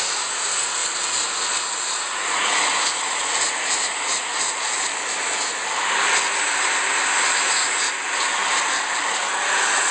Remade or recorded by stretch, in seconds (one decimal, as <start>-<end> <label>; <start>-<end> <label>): 0.0-0.8 remade; 0.8-2.0 recorded; 2.0-4.3 remade; 4.3-9.4 recorded; 9.4-9.9 remade